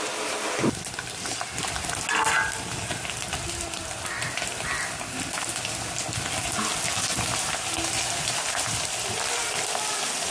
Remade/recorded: recorded